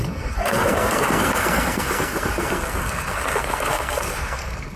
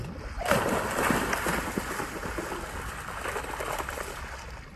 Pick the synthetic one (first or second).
first